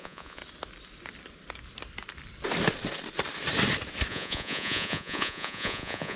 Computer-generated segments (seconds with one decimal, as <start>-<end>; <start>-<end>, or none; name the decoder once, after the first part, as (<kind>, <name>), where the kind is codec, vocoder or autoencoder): 0.0-0.4 (vocoder, Vocos); 4.1-6.2